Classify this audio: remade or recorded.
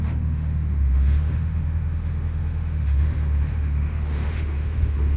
remade